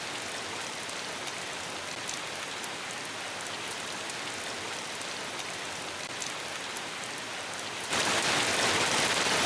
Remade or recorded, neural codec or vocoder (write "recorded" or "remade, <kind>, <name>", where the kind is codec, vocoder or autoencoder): recorded